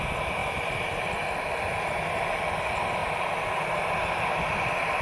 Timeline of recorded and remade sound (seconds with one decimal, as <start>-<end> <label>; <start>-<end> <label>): 0.0-0.4 recorded; 0.4-1.1 remade; 1.1-5.0 recorded